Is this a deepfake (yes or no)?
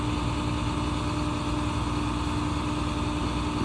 no